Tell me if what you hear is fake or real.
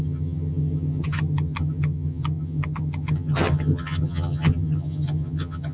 fake